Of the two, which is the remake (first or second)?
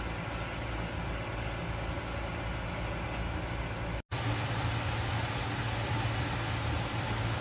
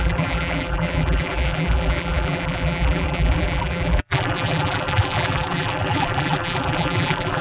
second